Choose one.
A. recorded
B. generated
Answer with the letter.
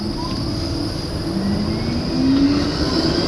A